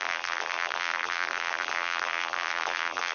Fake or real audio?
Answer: fake